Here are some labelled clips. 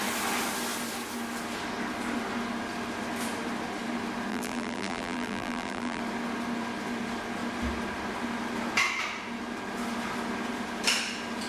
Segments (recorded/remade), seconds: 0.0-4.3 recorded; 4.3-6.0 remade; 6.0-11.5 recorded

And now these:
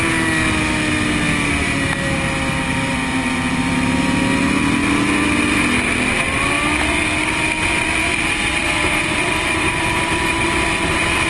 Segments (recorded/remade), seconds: 0.0-8.6 recorded; 8.6-10.5 remade; 10.5-11.3 recorded

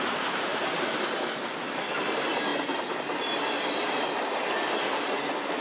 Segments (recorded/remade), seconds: 0.0-5.6 recorded

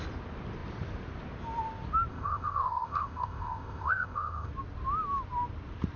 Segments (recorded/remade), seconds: 0.0-2.1 recorded; 2.1-4.5 remade; 4.5-6.0 recorded